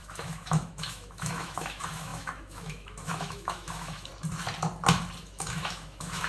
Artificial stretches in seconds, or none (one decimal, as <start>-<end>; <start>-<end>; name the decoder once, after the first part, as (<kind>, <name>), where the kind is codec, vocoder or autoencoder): 0.0-4.1 (autoencoder, DAC-VAE); 5.2-6.3